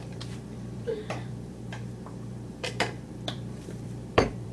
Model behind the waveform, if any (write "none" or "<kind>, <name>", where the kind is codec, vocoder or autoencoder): vocoder, BigVGAN v2